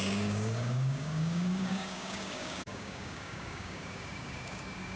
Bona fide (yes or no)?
no